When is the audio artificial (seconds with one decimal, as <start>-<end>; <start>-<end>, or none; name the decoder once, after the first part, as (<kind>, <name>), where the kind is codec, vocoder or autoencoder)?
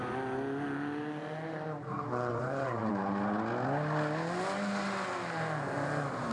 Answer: 2.3-2.9 (vocoder, Vocos)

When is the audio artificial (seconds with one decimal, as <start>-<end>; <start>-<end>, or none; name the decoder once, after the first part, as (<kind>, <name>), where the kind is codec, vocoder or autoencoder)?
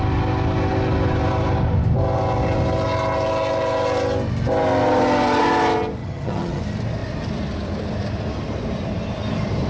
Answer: 6.0-6.6 (vocoder, HiFi-GAN)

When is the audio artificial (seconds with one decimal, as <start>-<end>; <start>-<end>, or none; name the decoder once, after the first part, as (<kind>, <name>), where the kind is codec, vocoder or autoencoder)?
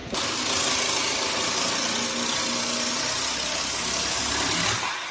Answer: none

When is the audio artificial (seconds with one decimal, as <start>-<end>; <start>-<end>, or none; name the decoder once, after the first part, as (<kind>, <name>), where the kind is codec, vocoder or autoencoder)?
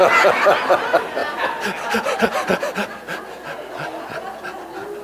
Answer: none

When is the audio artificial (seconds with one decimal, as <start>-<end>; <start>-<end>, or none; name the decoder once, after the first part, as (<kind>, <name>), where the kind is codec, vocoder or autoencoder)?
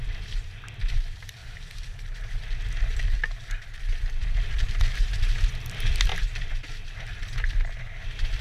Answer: 1.4-2.2 (vocoder, BigVGAN v2)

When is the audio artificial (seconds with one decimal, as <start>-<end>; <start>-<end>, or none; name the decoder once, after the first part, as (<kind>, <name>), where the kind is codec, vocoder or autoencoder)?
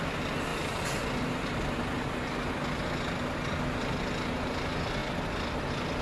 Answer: none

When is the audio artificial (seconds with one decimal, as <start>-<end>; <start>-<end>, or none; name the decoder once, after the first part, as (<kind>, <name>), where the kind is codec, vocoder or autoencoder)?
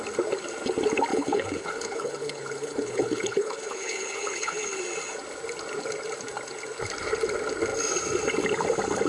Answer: 1.1-4.8 (codec, HILCodec)